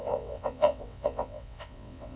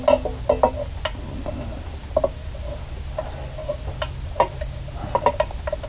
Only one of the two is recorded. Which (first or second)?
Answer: second